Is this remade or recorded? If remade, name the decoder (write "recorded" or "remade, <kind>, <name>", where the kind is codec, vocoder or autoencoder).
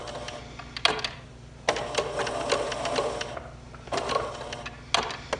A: recorded